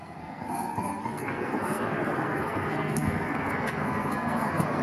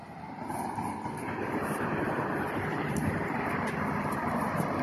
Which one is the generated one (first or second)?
first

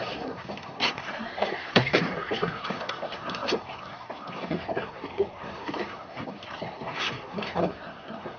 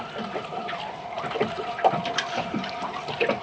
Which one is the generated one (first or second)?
first